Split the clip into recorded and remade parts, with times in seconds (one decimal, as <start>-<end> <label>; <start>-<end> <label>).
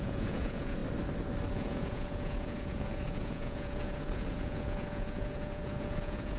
0.0-0.8 remade; 0.8-1.5 recorded; 1.5-6.4 remade